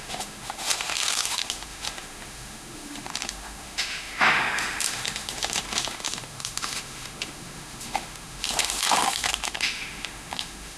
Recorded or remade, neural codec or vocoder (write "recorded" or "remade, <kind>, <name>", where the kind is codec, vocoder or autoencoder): remade, autoencoder, DAC-VAE